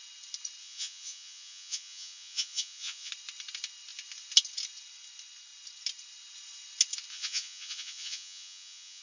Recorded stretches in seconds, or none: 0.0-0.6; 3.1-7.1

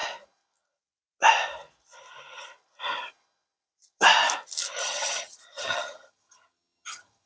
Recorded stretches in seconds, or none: 0.0-4.8

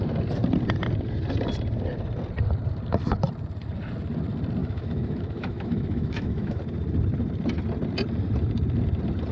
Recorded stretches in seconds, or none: 0.0-4.6; 6.6-9.3

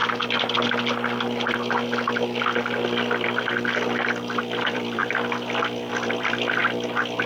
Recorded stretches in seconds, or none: 0.0-4.4; 5.0-5.9; 6.6-7.3

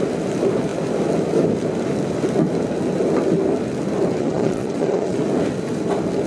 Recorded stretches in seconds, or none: 0.0-4.2; 5.2-6.3

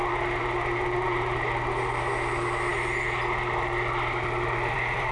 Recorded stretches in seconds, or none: 2.7-3.6

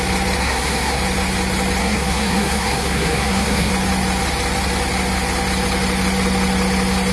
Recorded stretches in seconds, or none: 0.0-0.4; 1.0-1.8; 3.7-7.1

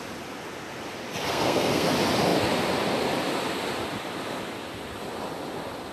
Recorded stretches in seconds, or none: 0.0-1.3; 1.9-5.9